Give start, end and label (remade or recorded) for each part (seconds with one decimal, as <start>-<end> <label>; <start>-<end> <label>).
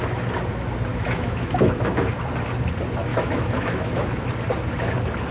0.0-0.9 recorded; 0.9-2.1 remade; 2.1-3.1 recorded; 3.1-4.3 remade; 4.3-5.3 recorded